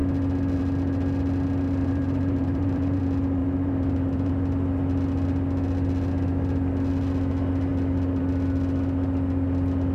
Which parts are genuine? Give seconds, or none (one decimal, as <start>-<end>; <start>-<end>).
0.0-1.8; 3.0-3.4; 4.3-9.9